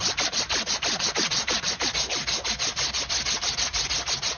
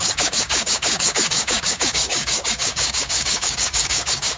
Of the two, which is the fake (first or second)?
second